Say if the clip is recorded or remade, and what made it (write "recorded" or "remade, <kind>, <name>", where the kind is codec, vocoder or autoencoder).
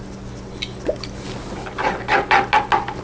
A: recorded